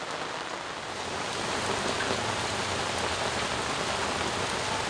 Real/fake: real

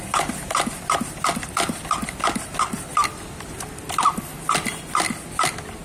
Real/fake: real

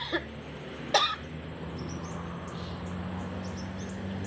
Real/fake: real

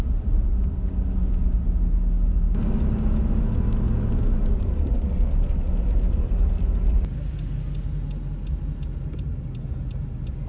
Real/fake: real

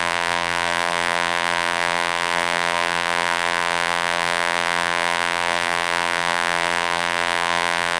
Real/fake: fake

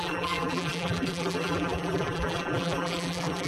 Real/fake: fake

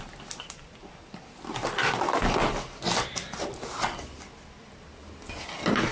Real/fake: real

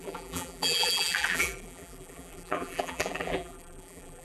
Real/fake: fake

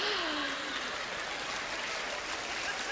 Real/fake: real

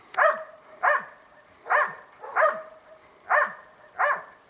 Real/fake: fake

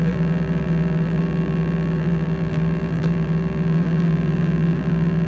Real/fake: fake